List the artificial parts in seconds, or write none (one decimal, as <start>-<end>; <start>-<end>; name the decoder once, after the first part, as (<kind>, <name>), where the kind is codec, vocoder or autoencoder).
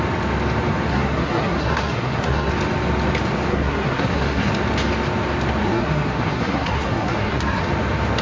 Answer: 0.9-2.5 (codec, SNAC); 3.5-4.5; 5.6-7.6